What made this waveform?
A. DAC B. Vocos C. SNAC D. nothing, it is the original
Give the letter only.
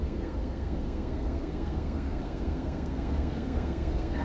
C